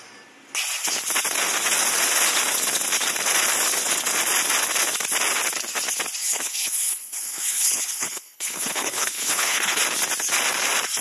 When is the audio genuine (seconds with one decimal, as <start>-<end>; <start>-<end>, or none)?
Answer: 0.0-6.2; 9.8-11.0